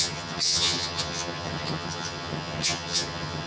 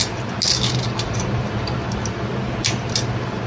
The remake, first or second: first